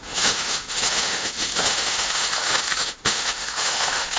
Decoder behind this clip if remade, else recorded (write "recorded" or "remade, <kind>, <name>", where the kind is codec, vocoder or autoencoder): remade, autoencoder, DAC-VAE